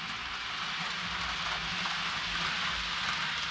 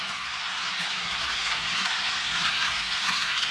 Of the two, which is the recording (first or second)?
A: first